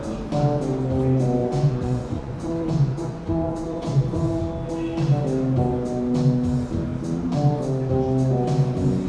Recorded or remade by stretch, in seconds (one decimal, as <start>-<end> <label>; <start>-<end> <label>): 0.0-1.4 recorded; 1.4-4.4 remade; 4.4-9.1 recorded